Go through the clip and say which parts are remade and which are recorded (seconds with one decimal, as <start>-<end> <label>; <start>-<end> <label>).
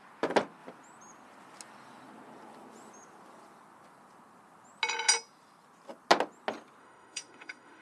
0.0-6.8 recorded; 6.8-7.8 remade